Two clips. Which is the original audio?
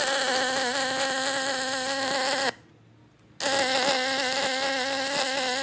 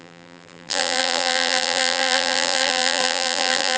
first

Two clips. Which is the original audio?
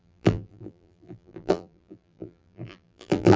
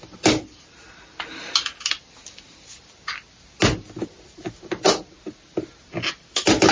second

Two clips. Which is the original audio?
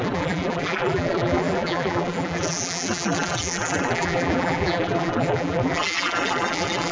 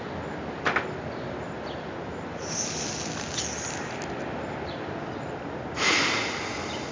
second